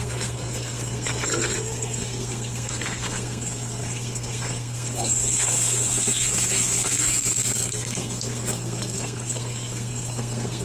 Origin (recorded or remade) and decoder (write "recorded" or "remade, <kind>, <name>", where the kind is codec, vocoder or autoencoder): remade, codec, SNAC